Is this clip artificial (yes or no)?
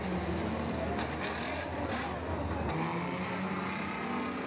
no